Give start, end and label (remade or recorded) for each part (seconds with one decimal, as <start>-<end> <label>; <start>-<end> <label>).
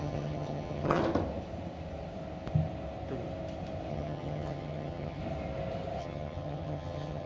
0.0-1.0 remade; 1.0-3.9 recorded; 3.9-5.2 remade; 5.2-6.0 recorded; 6.0-7.3 remade